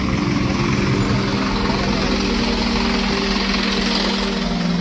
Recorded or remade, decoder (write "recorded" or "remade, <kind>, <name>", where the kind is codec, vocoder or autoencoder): recorded